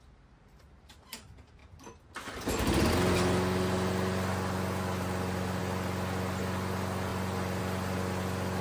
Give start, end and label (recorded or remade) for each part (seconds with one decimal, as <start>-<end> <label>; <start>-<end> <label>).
0.0-8.6 recorded